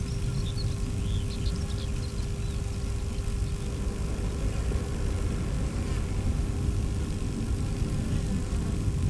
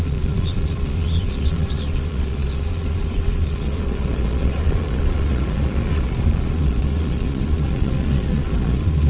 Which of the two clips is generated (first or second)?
second